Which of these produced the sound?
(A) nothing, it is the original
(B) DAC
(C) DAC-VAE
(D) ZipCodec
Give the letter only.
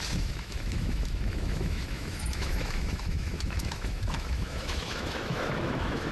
C